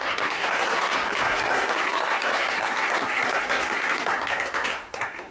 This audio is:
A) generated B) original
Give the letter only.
A